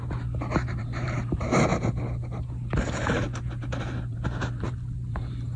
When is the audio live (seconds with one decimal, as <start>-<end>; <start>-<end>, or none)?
0.0-0.8; 1.7-3.8